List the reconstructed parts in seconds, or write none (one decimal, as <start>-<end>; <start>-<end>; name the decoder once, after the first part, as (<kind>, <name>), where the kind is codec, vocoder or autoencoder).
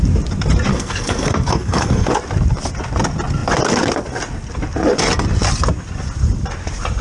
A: 0.7-2.1 (codec, SNAC)